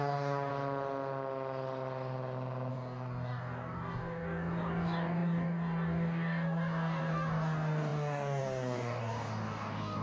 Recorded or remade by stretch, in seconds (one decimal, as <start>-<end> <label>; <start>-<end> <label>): 0.0-0.5 remade; 0.5-2.7 recorded; 2.7-10.0 remade